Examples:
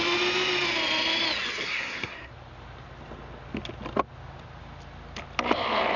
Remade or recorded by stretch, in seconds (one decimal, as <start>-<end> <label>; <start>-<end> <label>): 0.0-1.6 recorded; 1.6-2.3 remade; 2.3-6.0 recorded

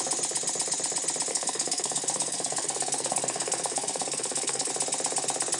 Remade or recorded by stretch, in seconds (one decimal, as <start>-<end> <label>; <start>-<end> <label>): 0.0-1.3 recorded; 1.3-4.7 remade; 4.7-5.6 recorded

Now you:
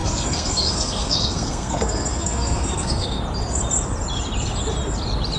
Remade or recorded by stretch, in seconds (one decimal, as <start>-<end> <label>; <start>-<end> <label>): 0.0-3.2 remade; 3.2-5.4 recorded

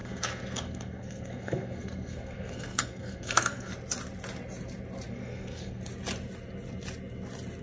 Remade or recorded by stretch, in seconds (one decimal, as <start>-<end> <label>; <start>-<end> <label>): 0.0-3.7 remade; 3.7-5.1 recorded; 5.1-5.8 remade; 5.8-7.6 recorded

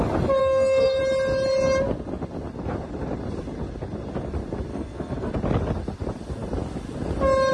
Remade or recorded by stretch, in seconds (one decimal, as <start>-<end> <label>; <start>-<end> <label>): 0.0-0.4 recorded; 0.4-1.0 remade; 1.0-4.7 recorded; 4.7-5.3 remade; 5.3-7.5 recorded